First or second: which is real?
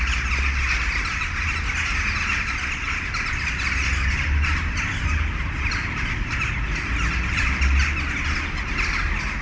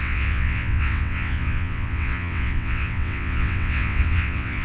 first